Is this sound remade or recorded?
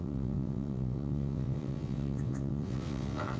remade